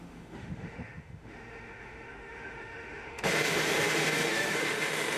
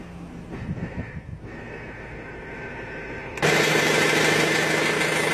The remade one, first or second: first